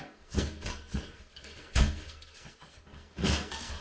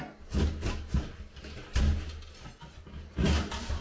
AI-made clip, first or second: first